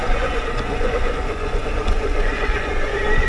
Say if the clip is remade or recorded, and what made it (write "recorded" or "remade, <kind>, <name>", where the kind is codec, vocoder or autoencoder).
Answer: remade, vocoder, Vocos